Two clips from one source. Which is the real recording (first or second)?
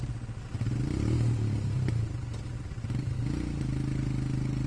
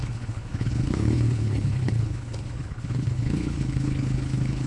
first